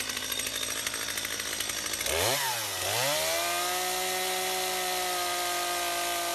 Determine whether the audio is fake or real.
real